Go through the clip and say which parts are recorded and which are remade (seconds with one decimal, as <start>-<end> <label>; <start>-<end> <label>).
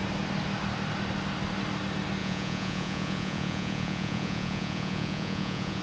0.0-2.2 recorded; 2.2-5.8 remade